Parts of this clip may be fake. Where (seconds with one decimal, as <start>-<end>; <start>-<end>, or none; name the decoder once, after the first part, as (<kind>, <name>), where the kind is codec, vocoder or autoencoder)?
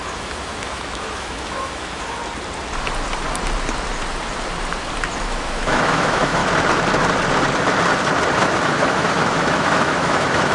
0.0-2.2 (autoencoder, DAC-VAE); 5.2-6.4; 8.4-10.5